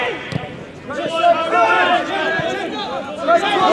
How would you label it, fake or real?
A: real